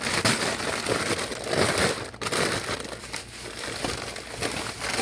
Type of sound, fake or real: real